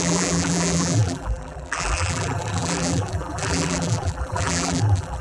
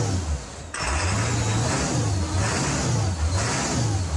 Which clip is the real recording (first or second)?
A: second